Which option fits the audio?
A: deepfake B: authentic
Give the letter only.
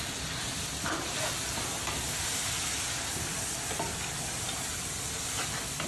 B